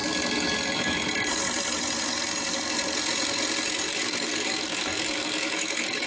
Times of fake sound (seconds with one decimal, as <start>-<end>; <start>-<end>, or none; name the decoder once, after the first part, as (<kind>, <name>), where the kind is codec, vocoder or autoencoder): 3.9-6.1 (codec, DAC)